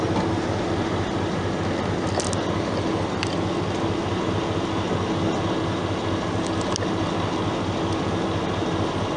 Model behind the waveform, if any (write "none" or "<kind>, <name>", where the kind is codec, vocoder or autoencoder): none